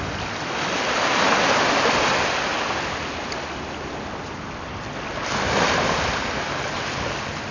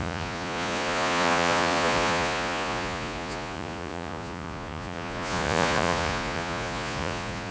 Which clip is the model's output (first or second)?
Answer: second